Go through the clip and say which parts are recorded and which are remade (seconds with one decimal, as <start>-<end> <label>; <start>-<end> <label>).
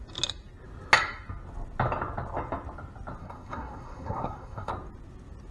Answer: 0.0-3.2 recorded; 3.2-4.7 remade; 4.7-5.5 recorded